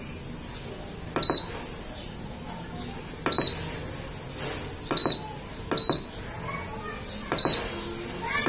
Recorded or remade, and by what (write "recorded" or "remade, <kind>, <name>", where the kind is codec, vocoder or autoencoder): recorded